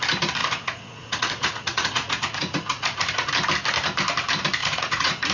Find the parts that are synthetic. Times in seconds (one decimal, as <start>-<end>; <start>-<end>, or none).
0.4-3.3; 4.6-5.3